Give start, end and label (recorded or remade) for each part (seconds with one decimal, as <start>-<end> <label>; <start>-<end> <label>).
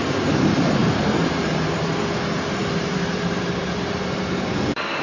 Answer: 0.0-0.8 recorded; 0.8-2.0 remade; 2.0-2.6 recorded; 2.6-4.6 remade; 4.6-5.0 recorded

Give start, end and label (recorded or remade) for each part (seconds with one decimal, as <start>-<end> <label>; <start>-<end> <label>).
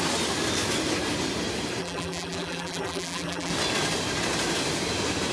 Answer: 0.0-1.8 recorded; 1.8-3.5 remade; 3.5-5.3 recorded